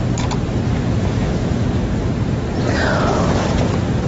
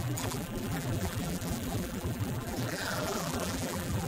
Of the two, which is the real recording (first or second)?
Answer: first